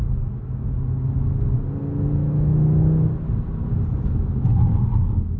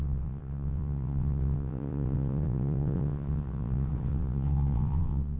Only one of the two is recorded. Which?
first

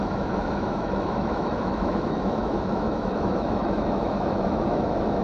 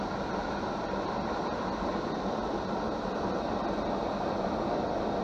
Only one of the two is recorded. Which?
second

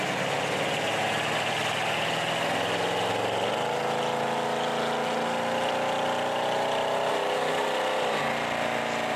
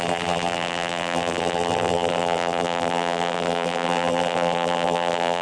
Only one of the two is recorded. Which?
first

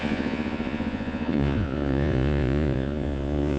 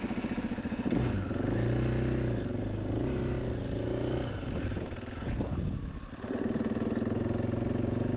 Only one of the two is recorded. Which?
second